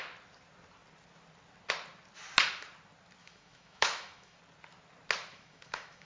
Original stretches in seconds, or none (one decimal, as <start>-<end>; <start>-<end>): 0.0-3.2; 4.4-5.3